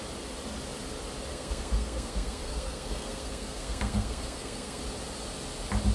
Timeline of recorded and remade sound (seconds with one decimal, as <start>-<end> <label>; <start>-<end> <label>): 0.0-1.3 recorded; 1.3-4.8 remade; 4.8-5.9 recorded